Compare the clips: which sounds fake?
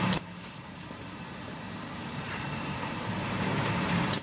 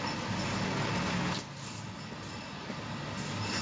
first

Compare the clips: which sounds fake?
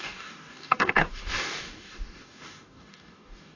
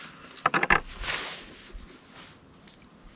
first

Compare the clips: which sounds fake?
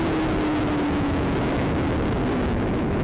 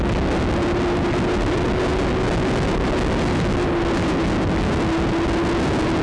first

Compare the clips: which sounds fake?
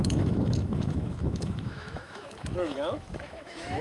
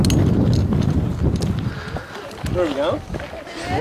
first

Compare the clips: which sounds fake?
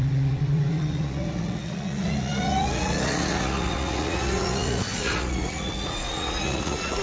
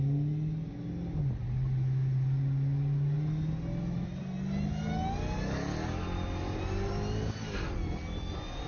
first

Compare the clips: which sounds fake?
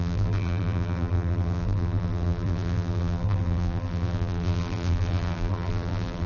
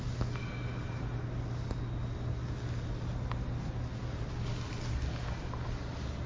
first